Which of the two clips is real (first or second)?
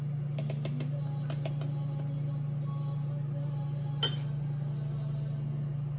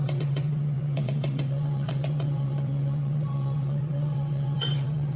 first